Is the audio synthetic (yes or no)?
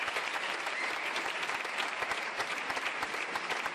yes